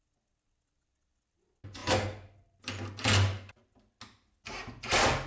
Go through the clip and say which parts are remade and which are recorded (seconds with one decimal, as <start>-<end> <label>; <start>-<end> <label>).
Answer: 0.0-5.3 recorded